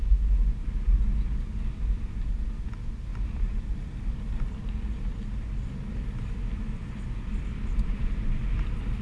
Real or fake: real